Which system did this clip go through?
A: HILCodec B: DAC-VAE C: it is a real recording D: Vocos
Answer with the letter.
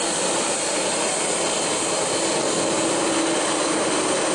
C